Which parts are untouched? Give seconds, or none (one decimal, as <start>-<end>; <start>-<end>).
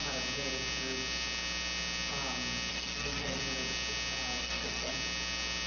0.0-2.7; 3.4-4.4; 4.9-5.7